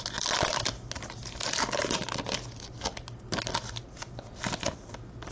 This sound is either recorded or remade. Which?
recorded